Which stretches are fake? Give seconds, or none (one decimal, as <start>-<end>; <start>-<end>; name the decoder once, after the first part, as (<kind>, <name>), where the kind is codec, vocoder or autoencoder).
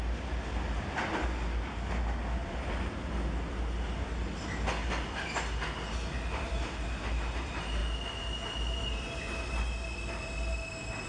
none